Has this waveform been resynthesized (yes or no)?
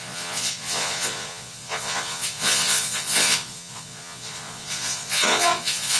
yes